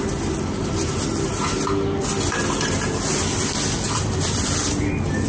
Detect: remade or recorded recorded